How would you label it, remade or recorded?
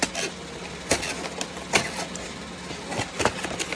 recorded